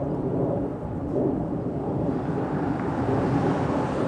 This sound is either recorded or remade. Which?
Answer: remade